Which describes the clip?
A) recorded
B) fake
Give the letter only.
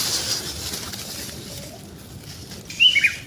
A